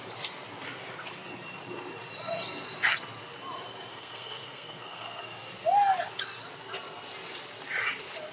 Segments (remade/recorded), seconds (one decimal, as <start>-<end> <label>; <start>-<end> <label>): 0.0-3.9 recorded; 3.9-5.2 remade; 5.2-8.3 recorded